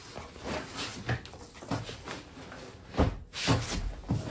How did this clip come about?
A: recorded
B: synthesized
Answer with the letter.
A